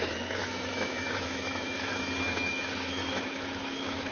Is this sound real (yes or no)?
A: no